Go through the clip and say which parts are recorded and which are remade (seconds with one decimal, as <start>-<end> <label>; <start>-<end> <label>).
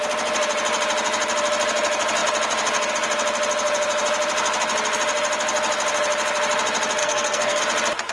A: 0.0-7.0 recorded; 7.0-7.6 remade; 7.6-8.1 recorded